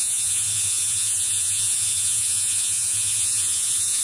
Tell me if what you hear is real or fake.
fake